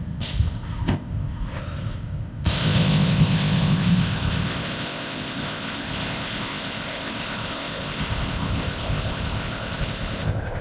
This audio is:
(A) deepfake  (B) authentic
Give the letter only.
A